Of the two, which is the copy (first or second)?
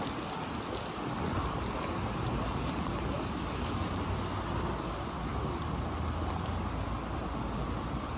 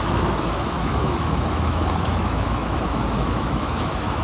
second